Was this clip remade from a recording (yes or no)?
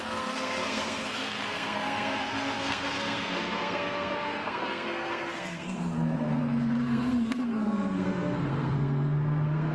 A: yes